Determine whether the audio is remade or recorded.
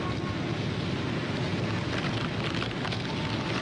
recorded